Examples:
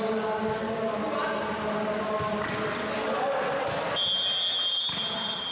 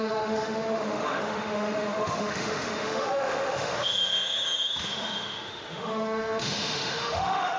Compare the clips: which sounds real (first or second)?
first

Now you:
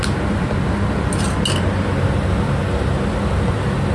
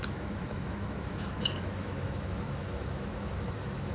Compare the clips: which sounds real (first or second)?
first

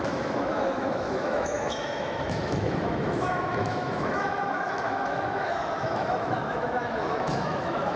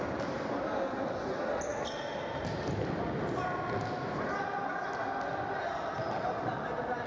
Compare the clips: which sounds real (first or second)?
second